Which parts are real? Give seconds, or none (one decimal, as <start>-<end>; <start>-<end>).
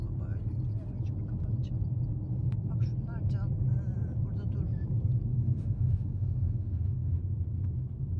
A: 0.0-5.3; 7.2-8.2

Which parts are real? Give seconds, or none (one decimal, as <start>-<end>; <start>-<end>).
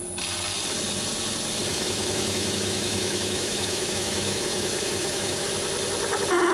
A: 0.0-1.7; 5.5-6.5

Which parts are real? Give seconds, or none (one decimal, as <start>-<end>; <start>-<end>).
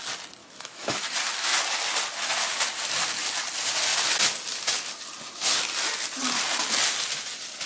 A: 0.0-0.4; 1.0-7.7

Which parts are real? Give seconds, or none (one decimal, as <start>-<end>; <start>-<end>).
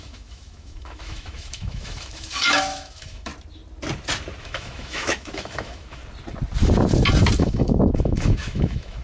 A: 3.3-4.4; 6.0-7.4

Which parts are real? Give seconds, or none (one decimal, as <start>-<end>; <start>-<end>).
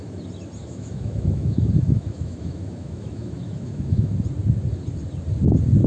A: 0.0-0.6; 4.1-5.9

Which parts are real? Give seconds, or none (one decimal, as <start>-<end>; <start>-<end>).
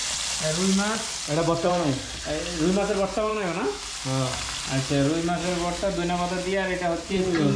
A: 0.0-3.3; 3.8-7.6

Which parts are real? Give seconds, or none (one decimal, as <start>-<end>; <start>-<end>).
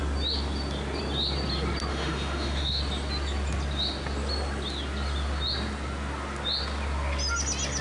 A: 0.0-1.9; 2.8-7.8